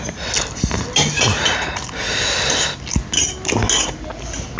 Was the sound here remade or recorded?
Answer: recorded